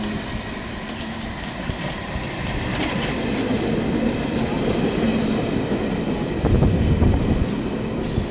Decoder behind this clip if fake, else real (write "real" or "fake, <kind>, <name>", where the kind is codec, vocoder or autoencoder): real